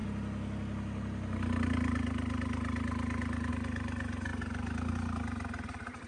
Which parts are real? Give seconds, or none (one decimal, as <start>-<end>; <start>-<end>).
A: 0.0-6.1